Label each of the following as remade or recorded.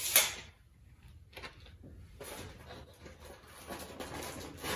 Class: recorded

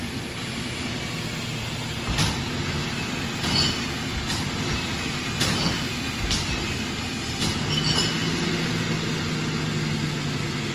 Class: recorded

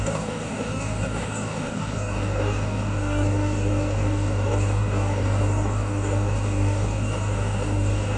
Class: remade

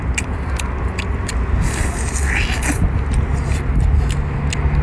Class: recorded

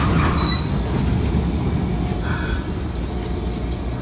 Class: recorded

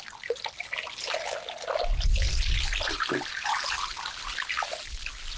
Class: recorded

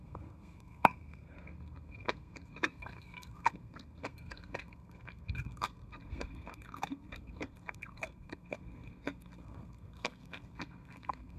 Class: remade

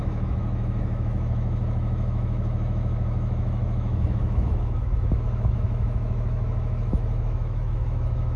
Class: remade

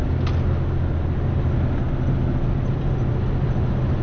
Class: recorded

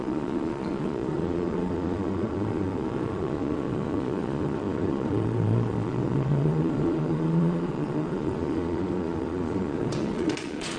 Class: remade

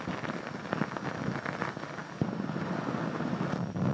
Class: recorded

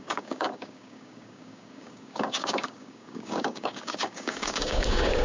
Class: remade